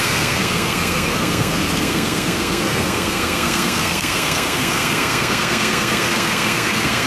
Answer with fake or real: fake